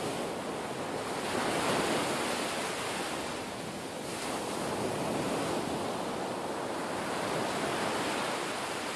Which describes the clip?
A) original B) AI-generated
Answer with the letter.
A